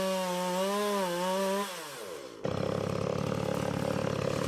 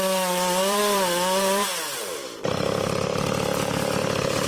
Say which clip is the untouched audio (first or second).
first